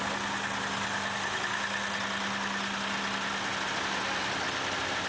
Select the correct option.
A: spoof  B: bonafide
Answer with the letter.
B